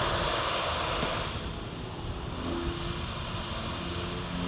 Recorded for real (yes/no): yes